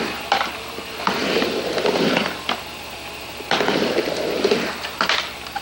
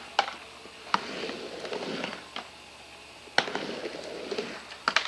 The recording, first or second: second